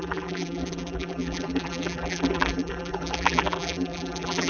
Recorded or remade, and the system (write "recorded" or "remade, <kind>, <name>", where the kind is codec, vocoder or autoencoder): remade, vocoder, BigVGAN v2